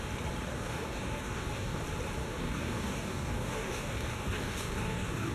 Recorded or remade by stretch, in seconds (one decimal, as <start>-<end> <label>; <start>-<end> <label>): 0.0-0.5 recorded; 0.5-1.8 remade; 1.8-2.2 recorded; 2.2-5.3 remade